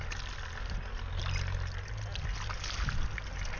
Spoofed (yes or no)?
no